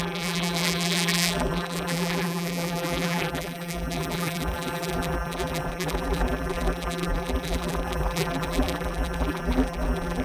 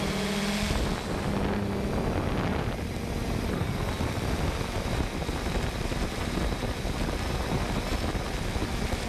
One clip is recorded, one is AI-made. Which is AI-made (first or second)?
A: first